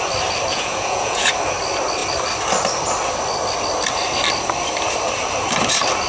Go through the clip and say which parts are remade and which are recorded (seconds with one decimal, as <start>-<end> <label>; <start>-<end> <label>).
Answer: 0.0-0.5 recorded; 0.5-1.3 remade; 1.3-6.1 recorded